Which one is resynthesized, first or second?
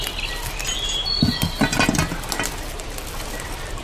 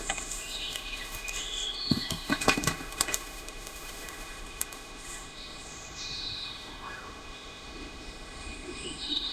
second